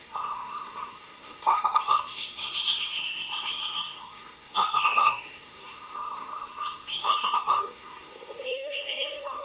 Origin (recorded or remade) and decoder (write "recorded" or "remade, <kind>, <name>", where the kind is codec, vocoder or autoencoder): remade, codec, SNAC